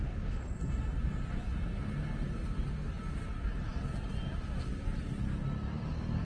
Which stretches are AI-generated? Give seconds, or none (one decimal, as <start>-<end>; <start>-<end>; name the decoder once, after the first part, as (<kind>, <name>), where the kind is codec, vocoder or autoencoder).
none